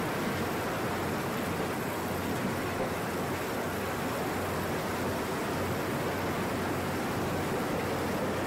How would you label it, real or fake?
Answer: real